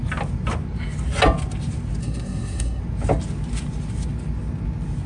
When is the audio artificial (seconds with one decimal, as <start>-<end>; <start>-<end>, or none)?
2.0-2.8